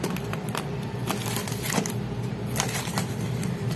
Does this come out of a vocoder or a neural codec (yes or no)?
yes